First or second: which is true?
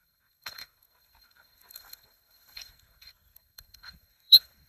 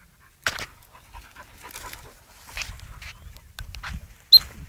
second